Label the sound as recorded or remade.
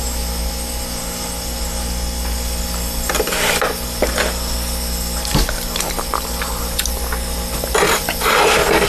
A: recorded